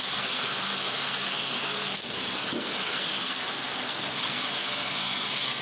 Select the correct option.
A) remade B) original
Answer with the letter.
A